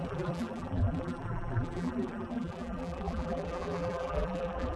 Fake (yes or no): yes